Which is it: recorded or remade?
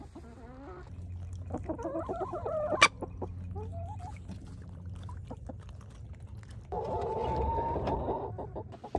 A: recorded